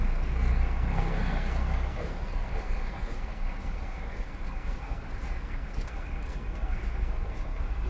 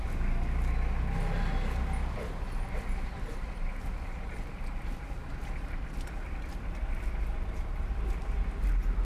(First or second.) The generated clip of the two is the first